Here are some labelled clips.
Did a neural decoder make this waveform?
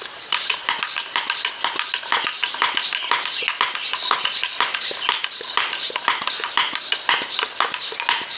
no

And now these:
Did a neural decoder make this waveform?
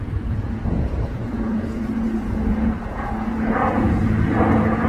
yes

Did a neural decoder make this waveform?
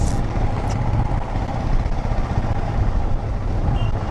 no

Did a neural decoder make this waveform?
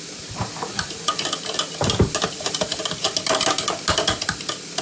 no